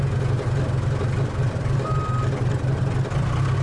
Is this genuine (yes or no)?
yes